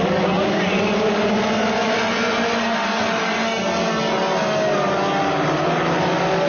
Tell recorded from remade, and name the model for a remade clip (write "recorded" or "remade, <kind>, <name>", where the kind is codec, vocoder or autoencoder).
recorded